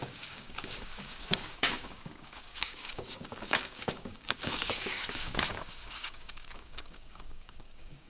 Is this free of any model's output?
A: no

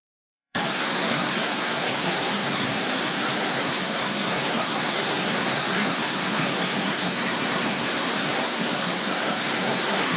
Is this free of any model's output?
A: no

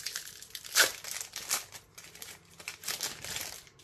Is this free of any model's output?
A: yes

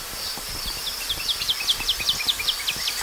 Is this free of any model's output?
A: no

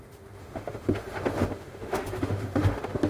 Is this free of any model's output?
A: no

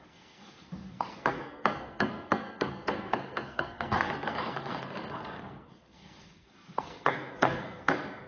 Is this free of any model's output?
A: no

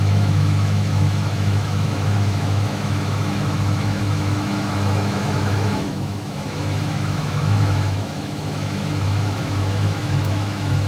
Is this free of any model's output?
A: no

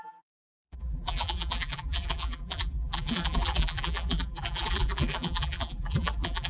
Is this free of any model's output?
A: no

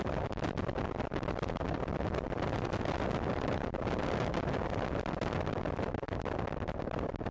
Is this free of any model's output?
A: yes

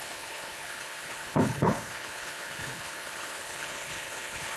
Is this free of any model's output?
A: no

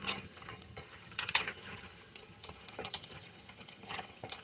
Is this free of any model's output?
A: no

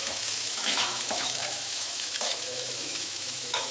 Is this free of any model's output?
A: no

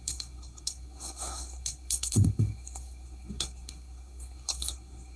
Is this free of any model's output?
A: no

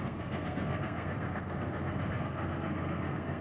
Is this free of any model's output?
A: no